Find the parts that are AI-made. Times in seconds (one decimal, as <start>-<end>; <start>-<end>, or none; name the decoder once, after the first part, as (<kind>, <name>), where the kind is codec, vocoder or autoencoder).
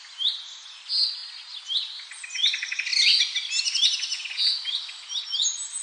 none